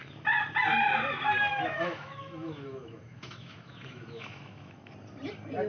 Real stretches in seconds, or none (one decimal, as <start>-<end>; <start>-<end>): 0.0-1.5; 4.9-5.7